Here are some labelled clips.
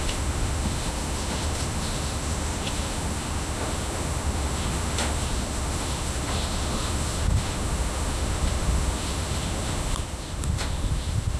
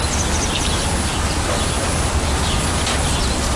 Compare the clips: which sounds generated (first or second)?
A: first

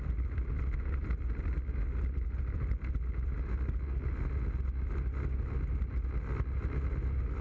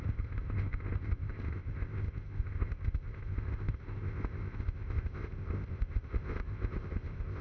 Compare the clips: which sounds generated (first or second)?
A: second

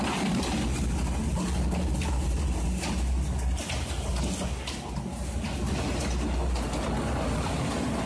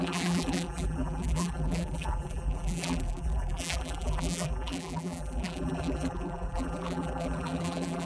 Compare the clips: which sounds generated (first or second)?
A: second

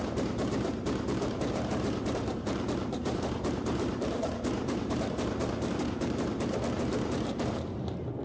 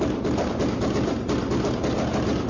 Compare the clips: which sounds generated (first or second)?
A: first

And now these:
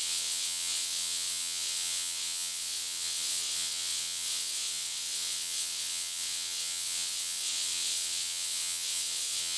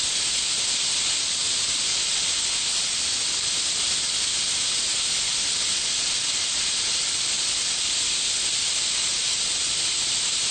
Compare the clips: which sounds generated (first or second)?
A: first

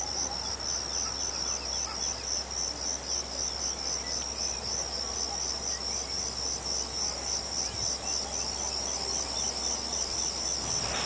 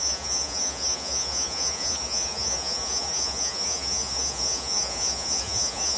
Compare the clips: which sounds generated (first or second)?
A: second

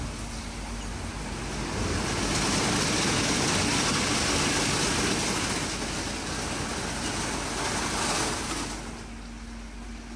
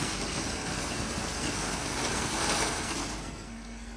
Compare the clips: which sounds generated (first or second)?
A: second